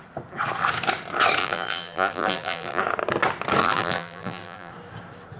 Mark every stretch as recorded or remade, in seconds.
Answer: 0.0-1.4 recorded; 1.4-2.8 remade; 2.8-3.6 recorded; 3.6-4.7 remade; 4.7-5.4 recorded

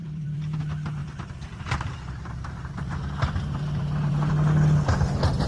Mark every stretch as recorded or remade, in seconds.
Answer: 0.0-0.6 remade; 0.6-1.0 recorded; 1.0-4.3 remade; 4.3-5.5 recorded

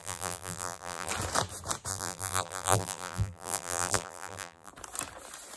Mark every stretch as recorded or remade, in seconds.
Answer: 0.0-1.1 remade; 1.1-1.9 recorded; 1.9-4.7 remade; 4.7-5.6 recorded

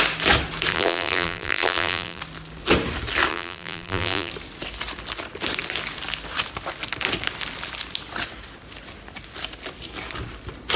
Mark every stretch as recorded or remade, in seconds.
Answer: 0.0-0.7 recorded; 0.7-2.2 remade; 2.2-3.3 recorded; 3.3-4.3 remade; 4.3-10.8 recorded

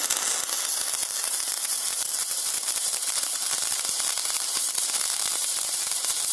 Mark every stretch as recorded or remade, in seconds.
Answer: 0.0-1.2 recorded; 1.2-6.3 remade

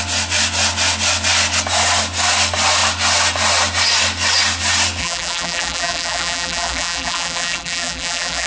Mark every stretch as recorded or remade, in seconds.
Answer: 0.0-5.0 recorded; 5.0-8.5 remade

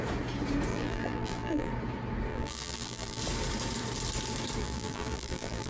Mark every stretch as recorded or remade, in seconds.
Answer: 0.0-0.7 recorded; 0.7-1.7 remade; 1.7-2.3 recorded; 2.3-3.2 remade; 3.2-4.6 recorded; 4.6-5.7 remade

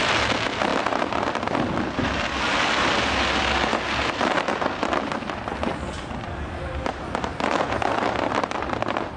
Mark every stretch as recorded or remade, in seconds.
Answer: 0.0-9.2 recorded